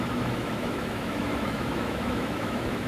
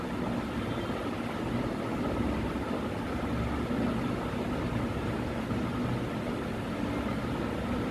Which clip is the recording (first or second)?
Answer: second